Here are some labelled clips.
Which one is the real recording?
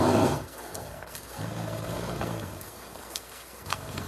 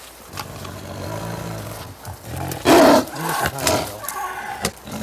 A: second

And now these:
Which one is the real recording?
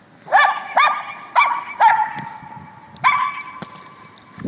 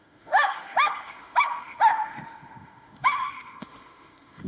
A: first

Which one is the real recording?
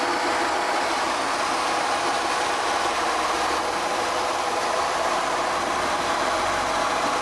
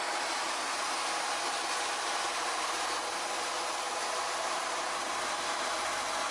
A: second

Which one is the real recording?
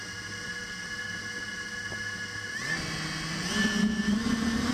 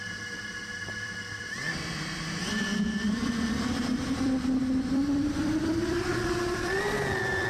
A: first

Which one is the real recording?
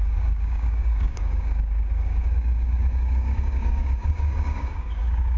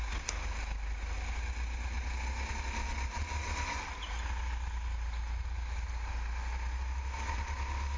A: second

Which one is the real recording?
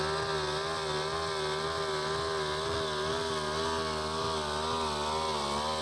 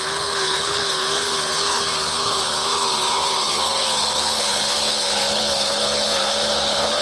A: first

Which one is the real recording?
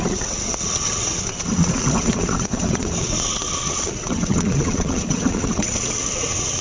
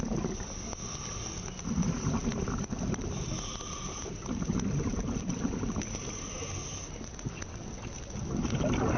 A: second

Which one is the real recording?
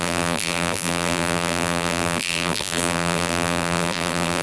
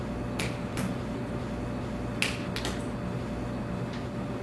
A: second